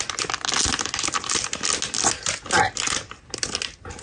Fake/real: real